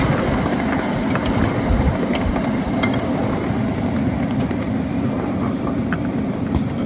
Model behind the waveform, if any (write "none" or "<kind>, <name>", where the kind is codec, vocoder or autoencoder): none